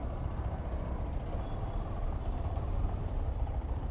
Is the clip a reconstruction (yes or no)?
no